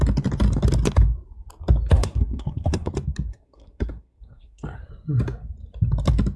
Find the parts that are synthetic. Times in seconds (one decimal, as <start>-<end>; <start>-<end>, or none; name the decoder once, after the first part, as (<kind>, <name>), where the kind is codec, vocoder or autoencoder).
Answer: 1.9-2.9 (codec, SNAC); 3.3-4.9